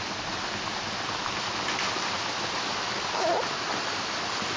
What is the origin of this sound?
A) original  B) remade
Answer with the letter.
A